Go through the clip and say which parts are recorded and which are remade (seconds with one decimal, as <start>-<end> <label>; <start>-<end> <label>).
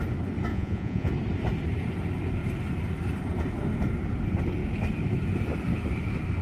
0.0-0.5 recorded; 0.5-1.1 remade; 1.1-6.4 recorded